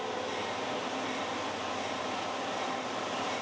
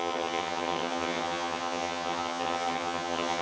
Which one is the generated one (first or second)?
second